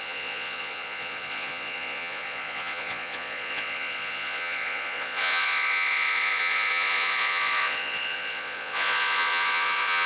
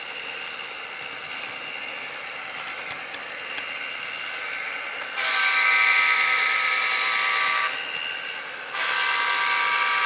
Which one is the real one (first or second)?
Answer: second